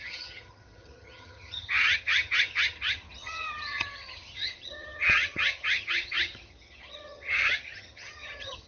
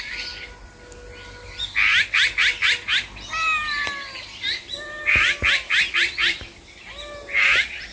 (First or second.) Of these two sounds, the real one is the second